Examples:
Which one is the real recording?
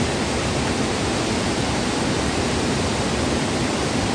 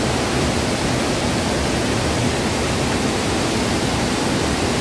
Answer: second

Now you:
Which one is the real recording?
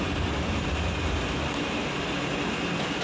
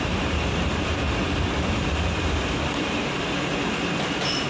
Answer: first